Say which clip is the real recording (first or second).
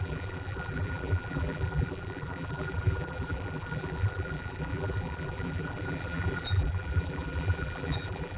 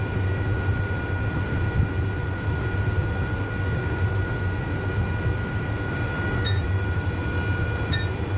second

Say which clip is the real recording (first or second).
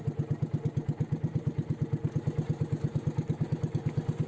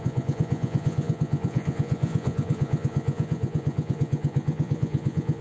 first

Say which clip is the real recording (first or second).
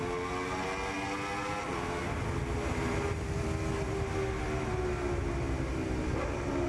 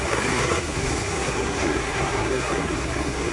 first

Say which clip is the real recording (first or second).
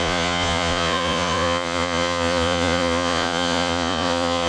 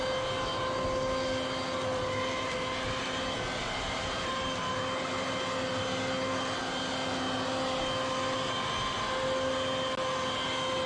second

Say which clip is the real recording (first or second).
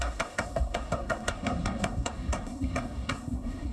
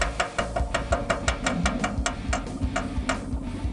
second